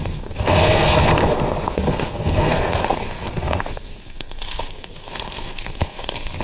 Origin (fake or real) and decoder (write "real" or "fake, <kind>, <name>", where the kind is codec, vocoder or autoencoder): fake, codec, SNAC